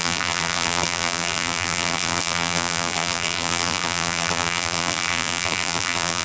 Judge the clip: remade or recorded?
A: remade